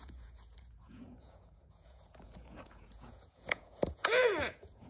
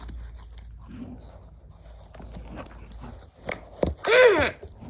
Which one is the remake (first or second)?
first